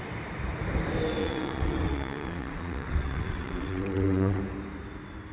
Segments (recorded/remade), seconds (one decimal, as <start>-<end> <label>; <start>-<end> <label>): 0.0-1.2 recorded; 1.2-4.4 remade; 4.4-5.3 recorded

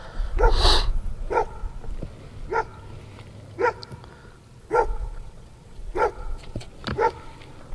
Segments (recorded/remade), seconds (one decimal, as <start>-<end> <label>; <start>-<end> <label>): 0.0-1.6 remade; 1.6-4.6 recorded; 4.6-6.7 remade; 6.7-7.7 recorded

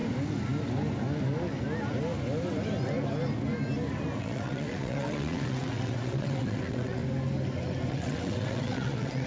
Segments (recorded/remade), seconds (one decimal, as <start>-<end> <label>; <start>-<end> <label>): 0.0-4.2 recorded; 4.2-7.0 remade; 7.0-7.9 recorded; 7.9-9.3 remade

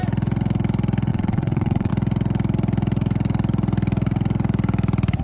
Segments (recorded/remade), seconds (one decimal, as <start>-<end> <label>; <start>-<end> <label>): 0.0-1.1 recorded; 1.1-1.9 remade; 1.9-5.2 recorded

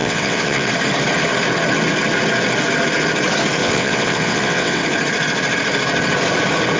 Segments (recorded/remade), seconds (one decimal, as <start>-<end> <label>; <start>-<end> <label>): 0.0-0.7 remade; 0.7-3.6 recorded; 3.6-4.8 remade; 4.8-6.8 recorded